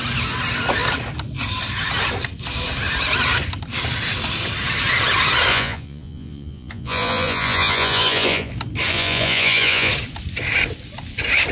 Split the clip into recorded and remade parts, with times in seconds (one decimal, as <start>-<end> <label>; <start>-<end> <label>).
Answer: 0.0-5.5 recorded; 5.5-8.5 remade; 8.5-8.9 recorded; 8.9-9.9 remade; 9.9-11.5 recorded